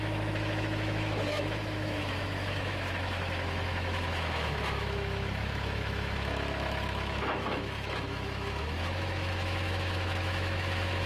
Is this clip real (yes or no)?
no